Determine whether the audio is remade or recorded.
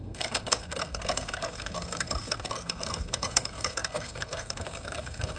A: remade